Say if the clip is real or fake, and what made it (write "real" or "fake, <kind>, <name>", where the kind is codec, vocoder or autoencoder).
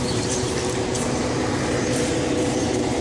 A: fake, vocoder, BigVGAN v2